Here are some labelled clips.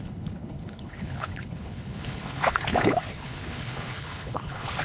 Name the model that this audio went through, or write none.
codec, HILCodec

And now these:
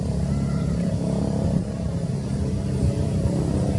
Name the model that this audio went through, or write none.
vocoder, BigVGAN v2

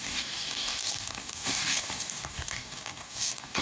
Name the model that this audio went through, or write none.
codec, DAC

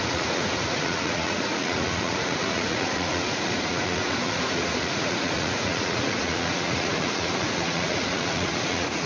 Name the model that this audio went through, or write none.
vocoder, Vocos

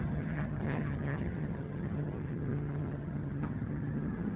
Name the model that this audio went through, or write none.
vocoder, HiFi-GAN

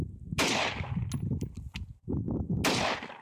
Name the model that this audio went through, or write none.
none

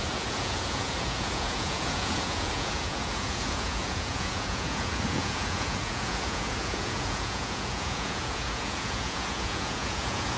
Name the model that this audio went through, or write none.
vocoder, Vocos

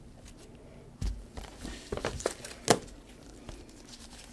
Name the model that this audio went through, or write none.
none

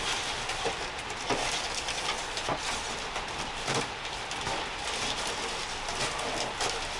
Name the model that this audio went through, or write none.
none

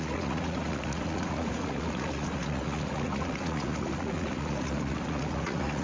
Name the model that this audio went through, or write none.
vocoder, Vocos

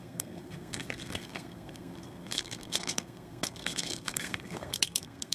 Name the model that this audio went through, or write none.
codec, SNAC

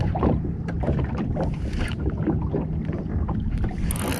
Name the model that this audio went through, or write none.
none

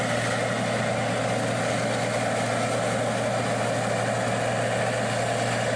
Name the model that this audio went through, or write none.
none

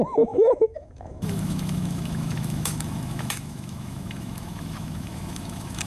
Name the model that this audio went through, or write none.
autoencoder, DAC-VAE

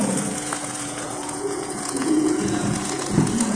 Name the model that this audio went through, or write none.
vocoder, Vocos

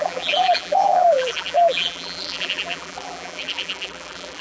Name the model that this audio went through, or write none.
vocoder, BigVGAN v2